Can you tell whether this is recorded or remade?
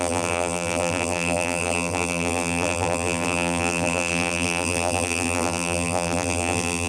remade